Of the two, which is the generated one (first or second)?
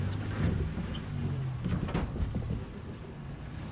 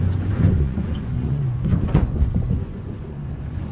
second